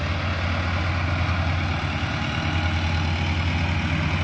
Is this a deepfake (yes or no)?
no